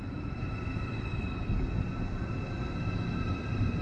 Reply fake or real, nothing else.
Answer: real